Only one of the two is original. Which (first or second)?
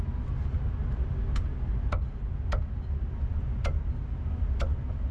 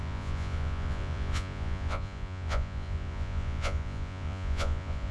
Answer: first